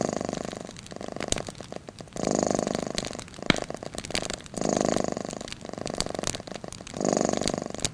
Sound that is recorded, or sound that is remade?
recorded